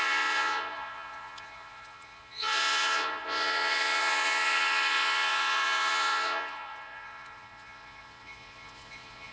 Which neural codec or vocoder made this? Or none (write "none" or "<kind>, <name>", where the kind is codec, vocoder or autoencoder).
vocoder, Vocos